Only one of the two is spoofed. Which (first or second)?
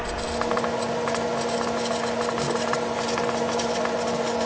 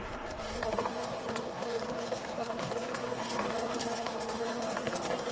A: second